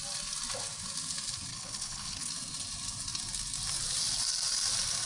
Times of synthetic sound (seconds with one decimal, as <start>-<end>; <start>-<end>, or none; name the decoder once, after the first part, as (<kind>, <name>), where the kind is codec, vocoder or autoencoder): 1.5-2.3 (codec, HILCodec)